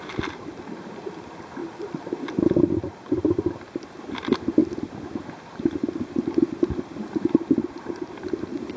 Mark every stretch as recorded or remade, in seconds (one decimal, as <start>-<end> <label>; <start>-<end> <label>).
0.0-8.8 remade